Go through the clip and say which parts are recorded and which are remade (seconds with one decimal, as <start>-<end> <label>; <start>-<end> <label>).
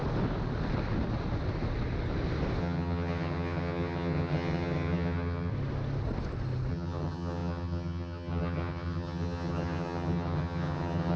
0.0-2.6 recorded; 2.6-5.5 remade; 5.5-6.7 recorded; 6.7-11.2 remade